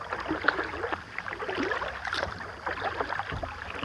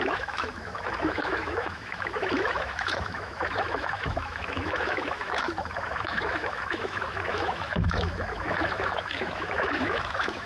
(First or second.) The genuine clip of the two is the first